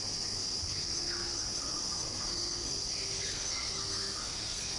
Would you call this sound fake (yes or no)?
yes